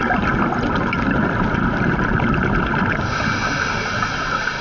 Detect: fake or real real